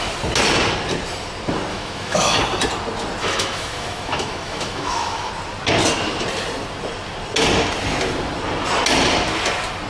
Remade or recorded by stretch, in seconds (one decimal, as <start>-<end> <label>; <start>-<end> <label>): 0.0-1.7 recorded; 1.7-2.4 remade; 2.4-3.2 recorded; 3.2-5.3 remade; 5.3-9.9 recorded